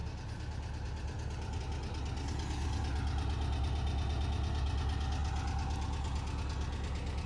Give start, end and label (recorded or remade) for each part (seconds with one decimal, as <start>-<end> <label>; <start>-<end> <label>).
0.0-7.3 recorded